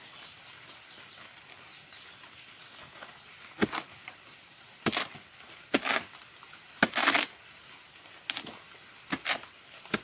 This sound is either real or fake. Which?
fake